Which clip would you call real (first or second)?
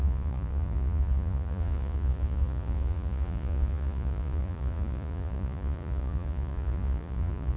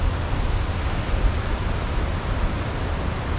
second